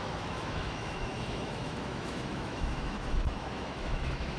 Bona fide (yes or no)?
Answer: no